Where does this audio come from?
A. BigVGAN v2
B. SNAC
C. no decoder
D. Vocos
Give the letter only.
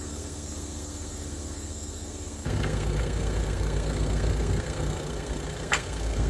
B